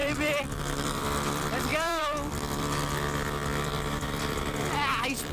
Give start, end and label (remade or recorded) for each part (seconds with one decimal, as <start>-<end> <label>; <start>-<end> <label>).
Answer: 0.0-5.3 remade